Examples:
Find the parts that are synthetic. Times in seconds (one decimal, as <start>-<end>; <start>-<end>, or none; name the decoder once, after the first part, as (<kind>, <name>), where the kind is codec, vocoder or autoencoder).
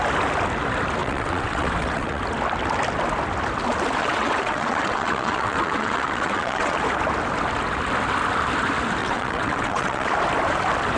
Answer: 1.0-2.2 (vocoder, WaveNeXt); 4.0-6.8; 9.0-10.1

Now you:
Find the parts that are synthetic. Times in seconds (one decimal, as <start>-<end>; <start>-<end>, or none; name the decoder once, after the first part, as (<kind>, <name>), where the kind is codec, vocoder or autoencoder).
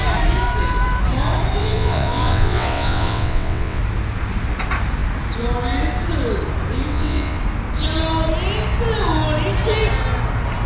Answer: 1.6-3.8 (vocoder, WaveNeXt); 6.9-7.4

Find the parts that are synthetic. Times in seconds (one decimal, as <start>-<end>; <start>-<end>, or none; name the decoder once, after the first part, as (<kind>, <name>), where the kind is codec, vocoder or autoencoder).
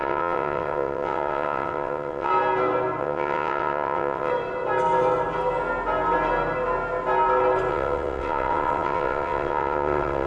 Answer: 0.0-2.3 (vocoder, WaveNeXt); 3.0-4.3; 7.7-10.3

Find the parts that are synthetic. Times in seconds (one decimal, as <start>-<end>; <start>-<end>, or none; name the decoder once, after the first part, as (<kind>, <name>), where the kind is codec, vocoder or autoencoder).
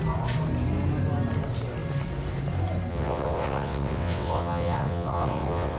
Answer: 2.9-5.8 (vocoder, WaveNeXt)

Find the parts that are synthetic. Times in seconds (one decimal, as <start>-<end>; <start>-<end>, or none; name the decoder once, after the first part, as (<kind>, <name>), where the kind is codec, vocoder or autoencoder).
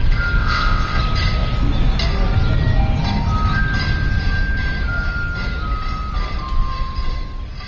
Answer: 0.4-1.0 (vocoder, WaveNeXt)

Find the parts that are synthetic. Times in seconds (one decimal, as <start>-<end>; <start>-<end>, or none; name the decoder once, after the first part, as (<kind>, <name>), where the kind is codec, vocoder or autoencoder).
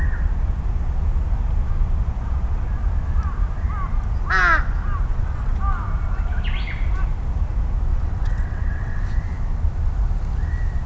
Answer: 5.1-5.6 (vocoder, WaveNeXt); 7.9-9.1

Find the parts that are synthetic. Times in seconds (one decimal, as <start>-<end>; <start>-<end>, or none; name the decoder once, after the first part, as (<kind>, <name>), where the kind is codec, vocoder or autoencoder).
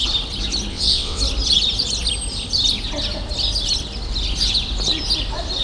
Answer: 0.7-1.2 (vocoder, WaveNeXt)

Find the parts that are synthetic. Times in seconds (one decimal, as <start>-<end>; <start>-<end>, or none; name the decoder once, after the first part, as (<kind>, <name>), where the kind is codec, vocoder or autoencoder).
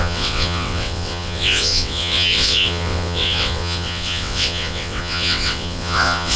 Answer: 0.0-6.4 (vocoder, WaveNeXt)